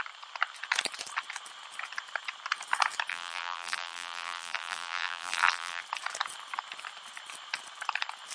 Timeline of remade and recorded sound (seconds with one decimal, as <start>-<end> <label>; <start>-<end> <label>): 0.0-3.1 recorded; 3.1-5.8 remade; 5.8-8.3 recorded